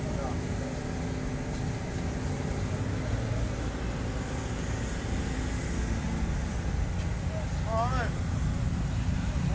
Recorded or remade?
recorded